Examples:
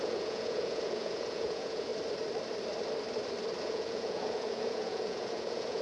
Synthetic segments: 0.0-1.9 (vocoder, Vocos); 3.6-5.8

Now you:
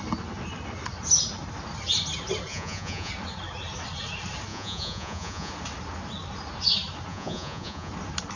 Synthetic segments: 2.5-3.1 (vocoder, Vocos); 4.5-5.5; 7.1-7.9

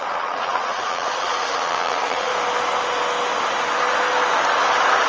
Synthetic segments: 0.0-2.3 (vocoder, Vocos)

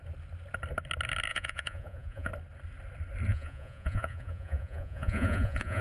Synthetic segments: 1.3-2.3 (vocoder, Vocos); 3.3-5.8

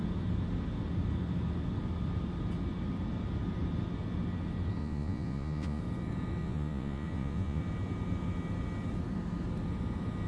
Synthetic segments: 4.8-5.8 (vocoder, Vocos); 6.4-7.6